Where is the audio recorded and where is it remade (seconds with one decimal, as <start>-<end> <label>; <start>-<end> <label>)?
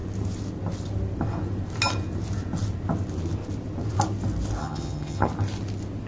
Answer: 0.0-4.6 recorded; 4.6-5.3 remade; 5.3-6.1 recorded